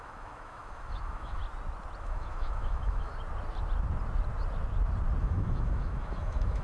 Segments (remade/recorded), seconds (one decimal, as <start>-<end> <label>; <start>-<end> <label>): 0.0-1.4 remade; 1.4-2.0 recorded; 2.0-3.1 remade; 3.1-5.2 recorded; 5.2-6.6 remade